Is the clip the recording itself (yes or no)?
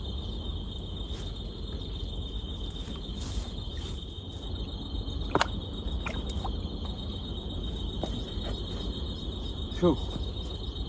yes